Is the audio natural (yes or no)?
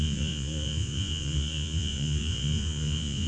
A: no